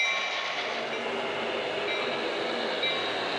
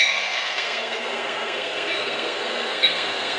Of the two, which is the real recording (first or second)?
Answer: first